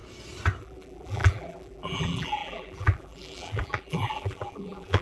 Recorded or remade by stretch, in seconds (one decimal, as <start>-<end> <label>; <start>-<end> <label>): 0.0-0.6 recorded; 0.6-5.0 remade

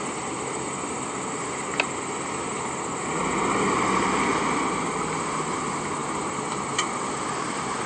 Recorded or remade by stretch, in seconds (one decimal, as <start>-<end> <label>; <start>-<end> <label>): 0.0-7.9 recorded